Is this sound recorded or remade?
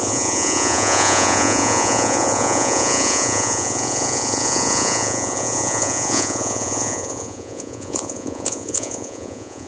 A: remade